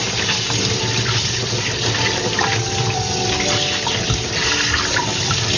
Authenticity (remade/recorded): recorded